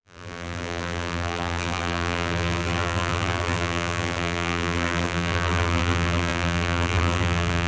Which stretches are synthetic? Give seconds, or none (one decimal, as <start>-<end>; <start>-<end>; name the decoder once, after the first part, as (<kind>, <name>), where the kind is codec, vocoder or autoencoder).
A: 0.0-7.7 (vocoder, BigVGAN v2)